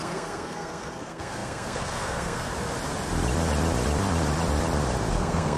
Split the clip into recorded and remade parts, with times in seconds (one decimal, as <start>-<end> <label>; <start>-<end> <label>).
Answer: 0.0-2.5 remade; 2.5-5.1 recorded; 5.1-5.6 remade